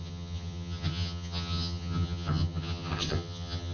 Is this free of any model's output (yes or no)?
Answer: no